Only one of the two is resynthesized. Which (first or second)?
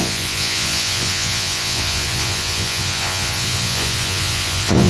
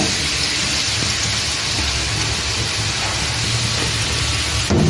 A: first